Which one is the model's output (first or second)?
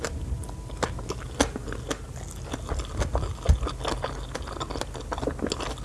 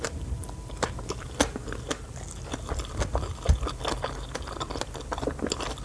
second